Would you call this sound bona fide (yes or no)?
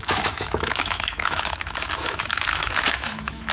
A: no